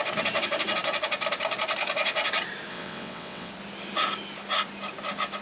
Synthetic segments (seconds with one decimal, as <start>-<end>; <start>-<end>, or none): 2.7-3.5